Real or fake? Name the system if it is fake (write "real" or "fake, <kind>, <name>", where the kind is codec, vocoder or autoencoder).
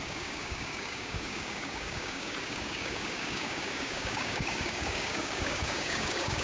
fake, codec, DAC